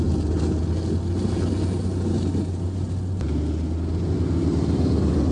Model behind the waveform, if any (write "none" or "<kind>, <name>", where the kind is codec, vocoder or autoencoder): none